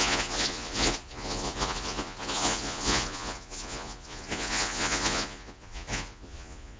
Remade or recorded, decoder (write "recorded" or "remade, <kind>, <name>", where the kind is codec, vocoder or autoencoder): remade, vocoder, Vocos